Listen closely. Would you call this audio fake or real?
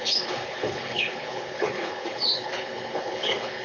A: fake